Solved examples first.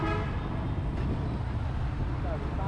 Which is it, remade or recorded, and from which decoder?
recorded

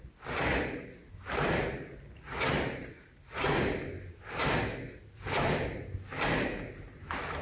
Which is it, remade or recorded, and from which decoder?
recorded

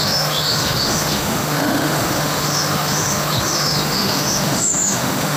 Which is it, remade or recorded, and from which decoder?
remade, autoencoder, DAC-VAE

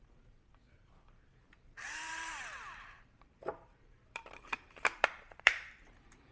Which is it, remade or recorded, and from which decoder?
remade, vocoder, BigVGAN v2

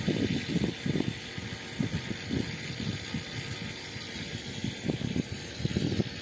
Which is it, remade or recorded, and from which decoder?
recorded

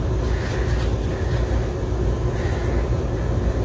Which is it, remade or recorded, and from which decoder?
recorded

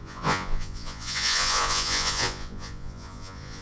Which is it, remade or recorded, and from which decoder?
remade, vocoder, Vocos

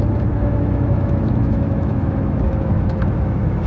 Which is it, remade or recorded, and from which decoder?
remade, autoencoder, DAC-VAE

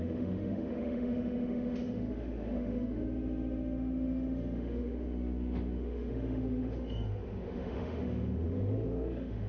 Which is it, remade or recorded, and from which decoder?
remade, autoencoder, DAC-VAE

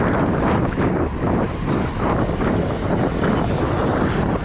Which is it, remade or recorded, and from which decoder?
recorded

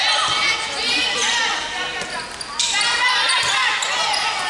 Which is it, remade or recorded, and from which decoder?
recorded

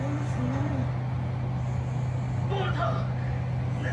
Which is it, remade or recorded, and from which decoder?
recorded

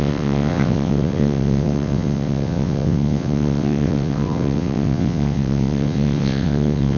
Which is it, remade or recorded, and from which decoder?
remade, vocoder, WaveNeXt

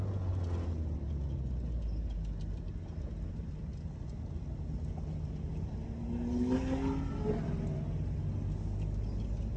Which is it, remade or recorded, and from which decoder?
recorded